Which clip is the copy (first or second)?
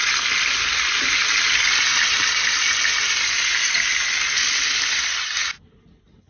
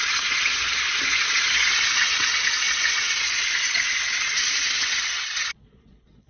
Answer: second